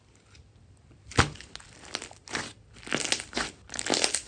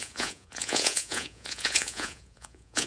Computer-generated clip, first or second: second